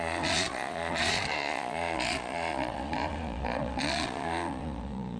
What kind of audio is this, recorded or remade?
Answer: remade